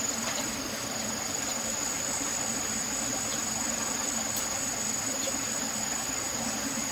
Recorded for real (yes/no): yes